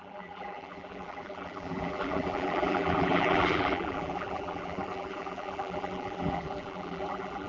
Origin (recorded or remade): remade